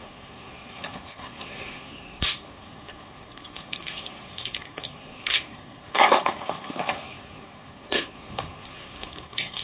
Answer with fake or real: fake